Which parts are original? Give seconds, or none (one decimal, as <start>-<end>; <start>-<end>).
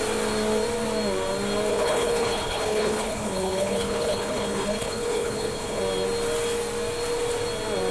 0.0-1.7; 5.8-7.9